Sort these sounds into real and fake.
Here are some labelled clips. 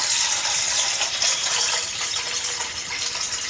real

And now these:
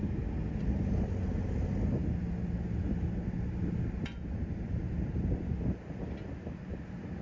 real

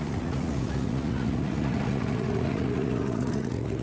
fake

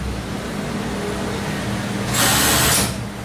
real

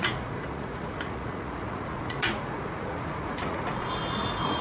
fake